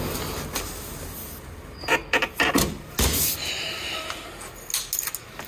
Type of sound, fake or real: real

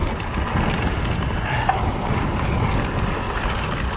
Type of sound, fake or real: real